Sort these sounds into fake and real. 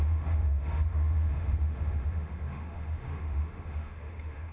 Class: fake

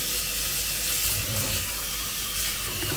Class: real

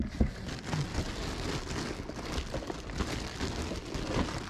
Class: real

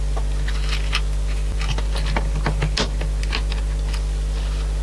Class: real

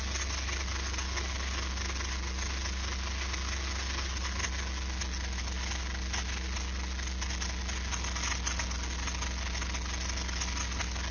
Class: real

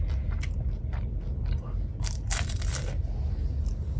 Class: real